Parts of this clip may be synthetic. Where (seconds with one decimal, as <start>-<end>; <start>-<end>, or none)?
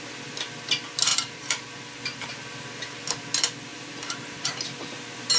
1.1-2.3; 3.7-4.5